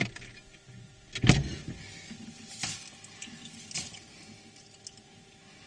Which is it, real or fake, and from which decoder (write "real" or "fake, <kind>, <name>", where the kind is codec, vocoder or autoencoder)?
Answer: real